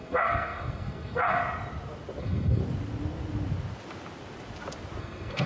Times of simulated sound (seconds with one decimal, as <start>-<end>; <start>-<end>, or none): 0.0-1.4; 2.2-2.6; 5.0-5.5